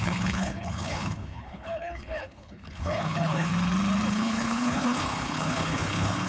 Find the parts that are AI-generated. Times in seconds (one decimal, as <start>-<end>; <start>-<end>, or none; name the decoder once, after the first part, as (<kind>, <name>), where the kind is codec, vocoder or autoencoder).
0.0-3.5 (codec, HILCodec); 4.1-6.3